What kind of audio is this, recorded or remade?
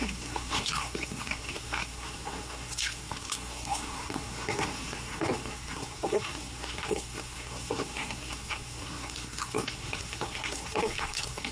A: remade